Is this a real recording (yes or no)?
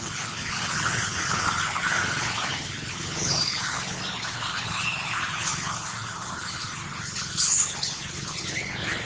no